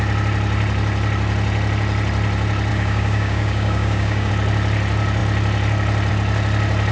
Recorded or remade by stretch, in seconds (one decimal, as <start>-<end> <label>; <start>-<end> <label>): 0.0-2.7 recorded; 2.7-4.3 remade; 4.3-6.9 recorded